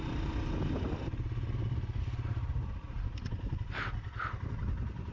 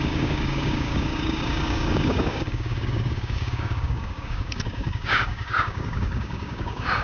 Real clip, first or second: first